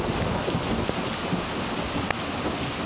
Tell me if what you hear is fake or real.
real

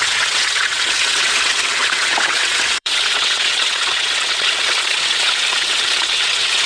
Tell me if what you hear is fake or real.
fake